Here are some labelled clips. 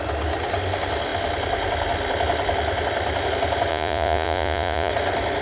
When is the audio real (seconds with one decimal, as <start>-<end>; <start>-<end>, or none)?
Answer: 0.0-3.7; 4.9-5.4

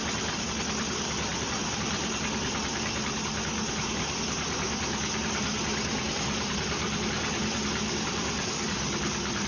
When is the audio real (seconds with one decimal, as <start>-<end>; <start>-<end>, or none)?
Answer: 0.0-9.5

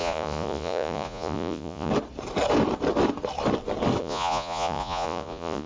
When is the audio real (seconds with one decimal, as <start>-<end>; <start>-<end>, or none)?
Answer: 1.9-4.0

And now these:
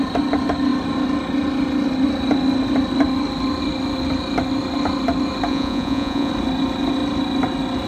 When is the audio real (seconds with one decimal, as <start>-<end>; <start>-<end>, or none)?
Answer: 0.0-5.5; 6.3-7.9

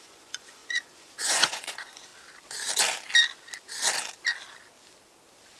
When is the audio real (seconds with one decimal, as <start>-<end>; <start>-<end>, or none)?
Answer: 2.1-5.6